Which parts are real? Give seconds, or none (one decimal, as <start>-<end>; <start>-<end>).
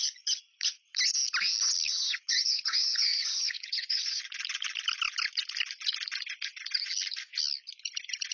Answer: 0.0-1.9; 4.2-8.3